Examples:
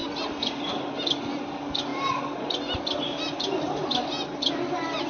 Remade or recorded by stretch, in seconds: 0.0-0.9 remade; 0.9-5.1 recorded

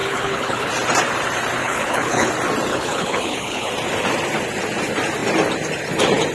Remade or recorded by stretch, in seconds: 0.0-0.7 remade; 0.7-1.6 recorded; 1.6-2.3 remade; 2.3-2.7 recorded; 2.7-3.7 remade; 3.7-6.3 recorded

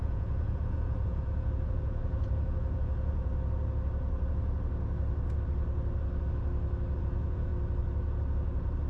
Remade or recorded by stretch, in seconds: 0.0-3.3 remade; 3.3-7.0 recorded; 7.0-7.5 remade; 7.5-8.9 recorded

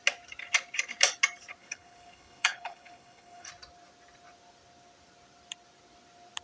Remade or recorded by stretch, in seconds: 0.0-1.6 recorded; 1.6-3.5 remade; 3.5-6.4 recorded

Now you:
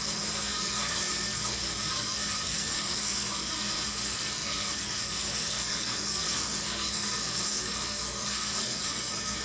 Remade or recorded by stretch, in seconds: 0.0-9.4 remade

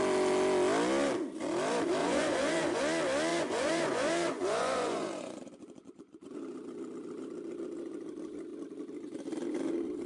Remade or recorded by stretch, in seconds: 0.0-2.0 recorded; 2.0-2.8 remade; 2.8-3.3 recorded; 3.3-6.4 remade; 6.4-10.1 recorded